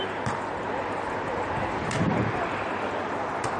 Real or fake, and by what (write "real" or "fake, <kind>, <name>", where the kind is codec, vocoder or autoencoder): real